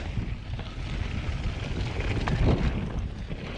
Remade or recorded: recorded